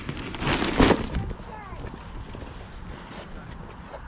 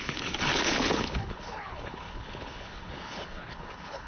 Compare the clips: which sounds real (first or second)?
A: first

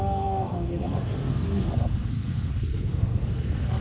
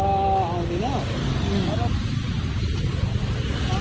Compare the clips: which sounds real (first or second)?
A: second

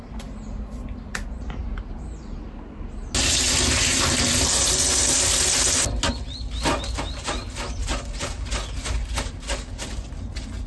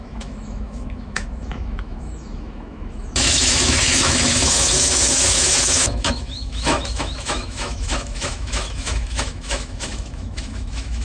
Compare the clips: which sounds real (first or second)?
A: first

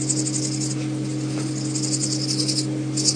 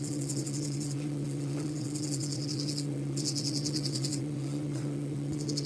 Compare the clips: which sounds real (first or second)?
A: first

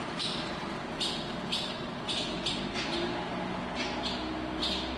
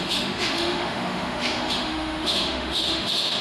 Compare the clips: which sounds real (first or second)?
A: first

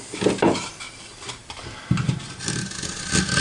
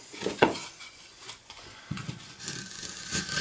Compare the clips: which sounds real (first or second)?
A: first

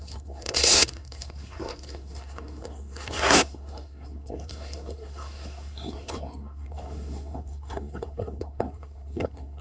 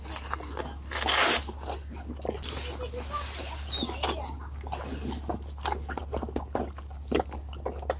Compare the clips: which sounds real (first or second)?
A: second